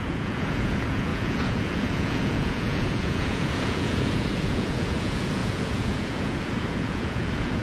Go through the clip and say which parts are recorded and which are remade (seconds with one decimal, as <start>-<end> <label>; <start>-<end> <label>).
0.0-7.6 remade